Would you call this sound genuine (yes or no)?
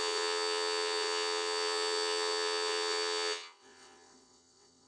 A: no